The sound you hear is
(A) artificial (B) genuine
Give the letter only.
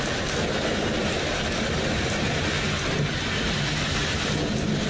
B